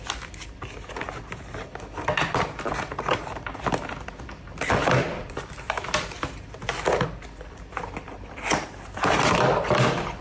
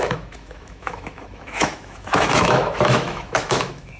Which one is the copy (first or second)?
second